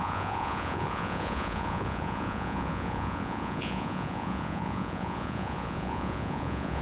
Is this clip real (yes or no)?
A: no